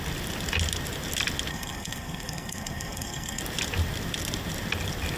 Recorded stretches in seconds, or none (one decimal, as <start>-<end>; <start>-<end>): 0.0-1.5; 3.4-5.2